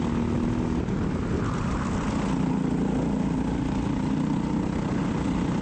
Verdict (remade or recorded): recorded